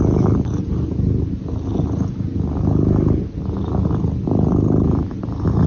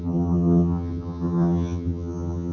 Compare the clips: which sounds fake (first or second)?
second